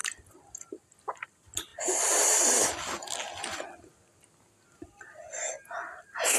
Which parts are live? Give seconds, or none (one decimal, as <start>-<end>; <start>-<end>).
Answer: 0.0-6.4